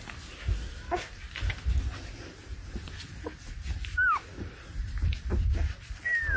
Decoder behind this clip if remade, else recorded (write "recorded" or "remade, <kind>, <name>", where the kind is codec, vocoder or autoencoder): recorded